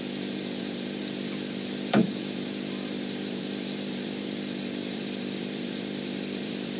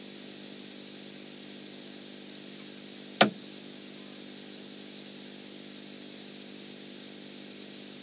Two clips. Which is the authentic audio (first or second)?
second